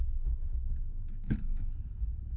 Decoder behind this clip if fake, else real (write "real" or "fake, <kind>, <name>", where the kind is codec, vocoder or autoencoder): fake, codec, HILCodec